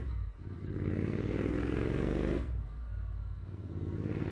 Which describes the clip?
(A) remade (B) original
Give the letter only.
A